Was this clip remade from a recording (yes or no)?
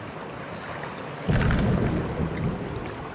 no